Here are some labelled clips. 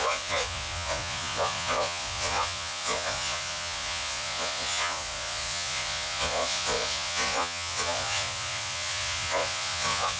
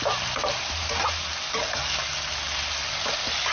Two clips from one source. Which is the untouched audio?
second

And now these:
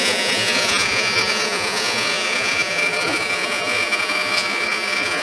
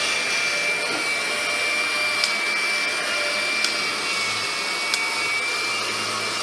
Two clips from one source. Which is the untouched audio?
second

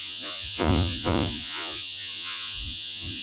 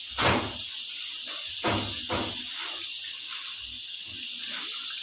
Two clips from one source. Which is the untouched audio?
second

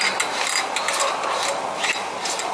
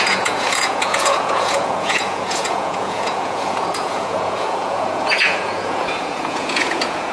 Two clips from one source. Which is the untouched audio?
first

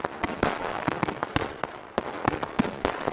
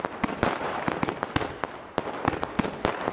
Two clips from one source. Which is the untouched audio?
second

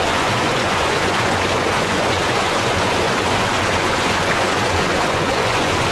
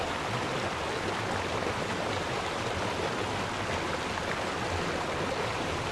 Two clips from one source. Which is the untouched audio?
second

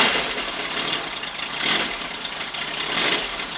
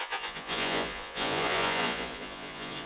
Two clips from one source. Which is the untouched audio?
first